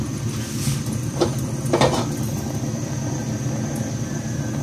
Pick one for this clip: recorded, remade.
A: recorded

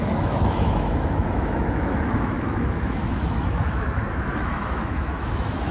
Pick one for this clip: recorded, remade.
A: remade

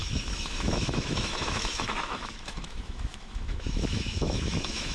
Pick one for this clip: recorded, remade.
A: remade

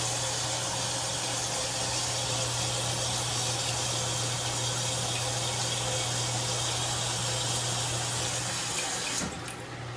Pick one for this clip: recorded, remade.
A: recorded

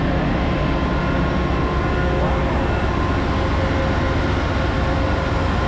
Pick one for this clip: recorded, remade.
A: recorded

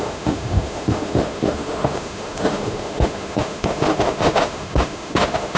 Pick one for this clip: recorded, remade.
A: remade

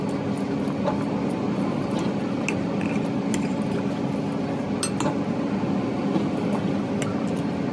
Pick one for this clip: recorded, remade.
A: recorded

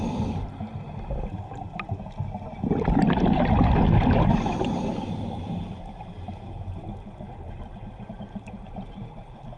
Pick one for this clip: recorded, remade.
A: recorded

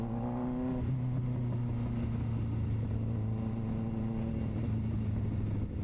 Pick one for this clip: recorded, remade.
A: recorded